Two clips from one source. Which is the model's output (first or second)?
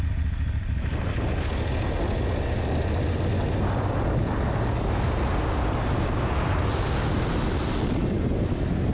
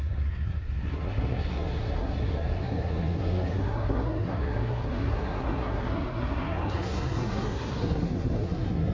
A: second